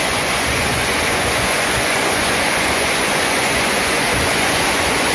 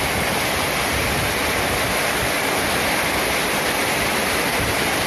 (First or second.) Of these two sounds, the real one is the second